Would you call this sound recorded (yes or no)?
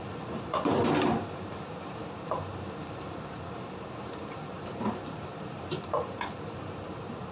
no